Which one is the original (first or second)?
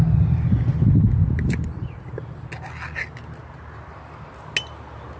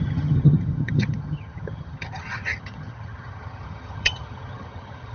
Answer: first